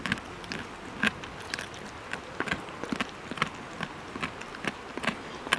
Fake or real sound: real